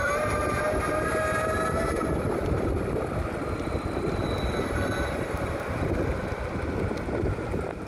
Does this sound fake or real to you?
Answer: real